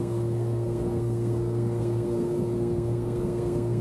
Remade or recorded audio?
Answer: remade